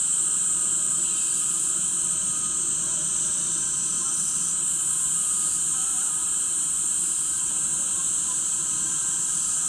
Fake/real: fake